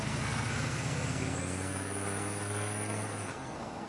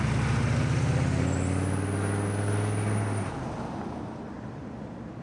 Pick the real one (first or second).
second